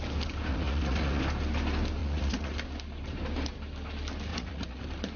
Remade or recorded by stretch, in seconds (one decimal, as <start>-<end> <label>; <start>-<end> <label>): 0.0-0.5 recorded; 0.5-1.2 remade; 1.2-2.0 recorded; 2.0-2.5 remade; 2.5-4.3 recorded; 4.3-4.8 remade; 4.8-5.2 recorded